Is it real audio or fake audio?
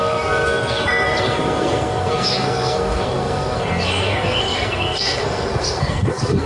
fake